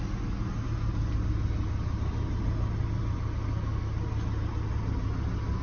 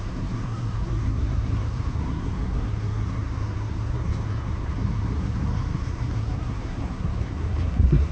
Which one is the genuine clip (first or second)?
first